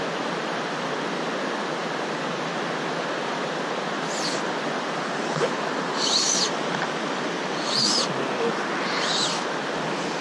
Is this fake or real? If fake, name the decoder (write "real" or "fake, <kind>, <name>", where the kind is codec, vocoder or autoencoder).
real